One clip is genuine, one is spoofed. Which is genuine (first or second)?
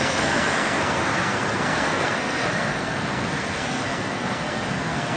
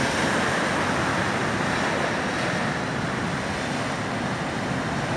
second